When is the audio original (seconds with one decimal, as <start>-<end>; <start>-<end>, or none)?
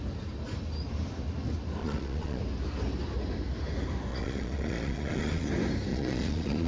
0.0-1.8; 2.4-4.1; 5.5-5.9